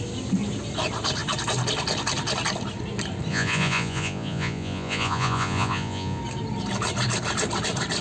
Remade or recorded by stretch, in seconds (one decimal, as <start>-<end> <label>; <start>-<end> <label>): 0.0-3.3 recorded; 3.3-6.2 remade; 6.2-8.0 recorded